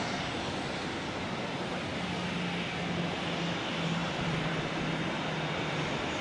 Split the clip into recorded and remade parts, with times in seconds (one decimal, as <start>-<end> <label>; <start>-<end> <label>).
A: 0.0-4.0 recorded; 4.0-4.5 remade; 4.5-6.2 recorded